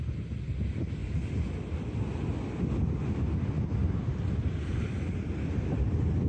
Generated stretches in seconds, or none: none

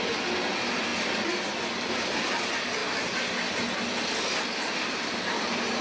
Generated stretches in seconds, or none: none

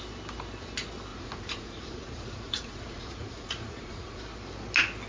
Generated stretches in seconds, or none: 1.1-4.2 (vocoder, Vocos)

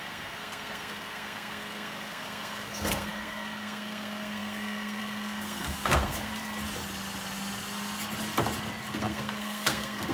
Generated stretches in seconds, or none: 0.0-6.3 (codec, SNAC); 8.9-10.1

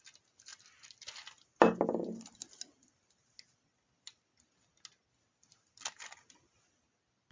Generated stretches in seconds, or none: none